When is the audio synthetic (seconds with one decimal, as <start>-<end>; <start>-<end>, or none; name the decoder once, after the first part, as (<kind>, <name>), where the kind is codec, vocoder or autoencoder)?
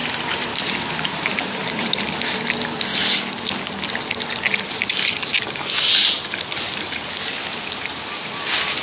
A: 0.0-1.9 (vocoder, BigVGAN v2)